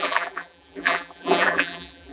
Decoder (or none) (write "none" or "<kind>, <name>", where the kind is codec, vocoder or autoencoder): vocoder, BigVGAN v2